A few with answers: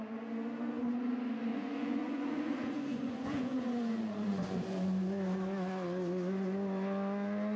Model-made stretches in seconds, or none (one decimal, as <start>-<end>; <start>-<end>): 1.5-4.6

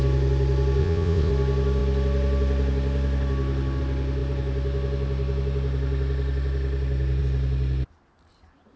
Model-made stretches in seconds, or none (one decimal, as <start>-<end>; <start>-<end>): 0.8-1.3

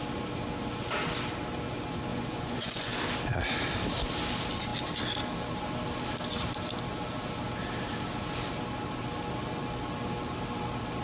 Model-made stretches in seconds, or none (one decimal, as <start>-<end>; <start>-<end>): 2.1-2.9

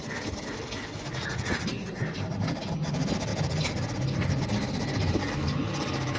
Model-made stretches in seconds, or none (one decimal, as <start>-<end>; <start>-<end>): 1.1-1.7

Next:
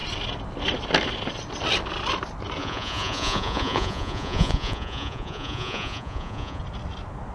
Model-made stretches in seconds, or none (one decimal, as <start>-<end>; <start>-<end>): 2.6-6.6

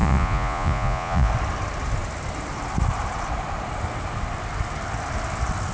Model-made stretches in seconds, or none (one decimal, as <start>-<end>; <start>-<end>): 0.0-1.3